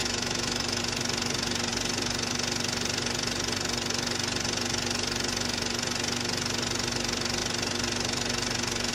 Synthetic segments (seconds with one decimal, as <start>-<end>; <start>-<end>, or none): 0.0-0.8